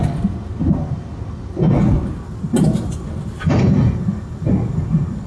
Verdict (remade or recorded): recorded